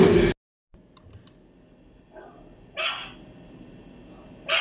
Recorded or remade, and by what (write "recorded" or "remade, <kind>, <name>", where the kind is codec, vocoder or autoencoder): recorded